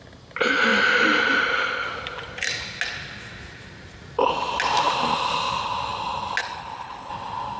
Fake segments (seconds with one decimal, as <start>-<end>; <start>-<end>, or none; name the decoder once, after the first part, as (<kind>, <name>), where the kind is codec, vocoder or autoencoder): 6.4-7.1 (codec, HILCodec)